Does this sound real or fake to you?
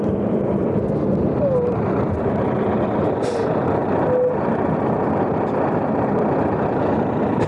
real